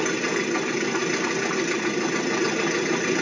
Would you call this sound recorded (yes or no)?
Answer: yes